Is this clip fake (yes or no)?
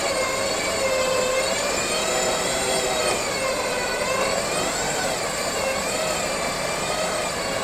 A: yes